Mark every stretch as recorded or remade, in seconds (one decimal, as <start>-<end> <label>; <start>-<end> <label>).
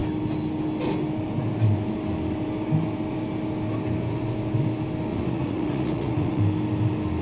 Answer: 0.0-5.1 recorded; 5.1-6.4 remade; 6.4-7.2 recorded